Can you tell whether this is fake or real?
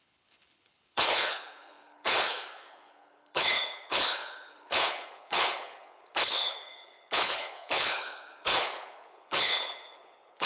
fake